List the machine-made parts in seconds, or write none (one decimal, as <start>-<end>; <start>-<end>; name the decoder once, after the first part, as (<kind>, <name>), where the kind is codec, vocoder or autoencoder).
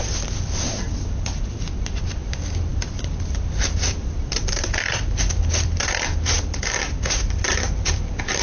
0.0-8.4 (vocoder, BigVGAN v2)